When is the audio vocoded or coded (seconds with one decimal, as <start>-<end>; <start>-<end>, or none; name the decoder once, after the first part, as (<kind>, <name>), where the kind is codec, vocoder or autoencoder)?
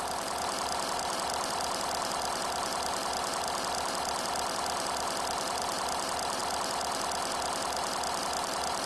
0.0-6.4 (vocoder, BigVGAN v2); 8.2-8.9